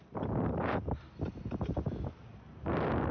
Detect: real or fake real